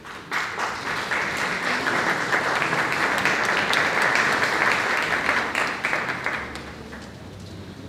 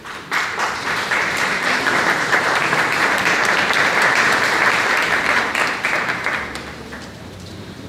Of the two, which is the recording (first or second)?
first